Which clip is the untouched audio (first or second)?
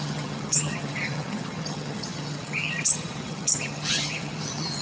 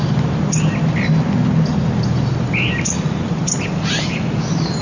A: second